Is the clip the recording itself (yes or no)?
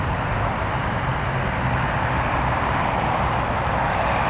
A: yes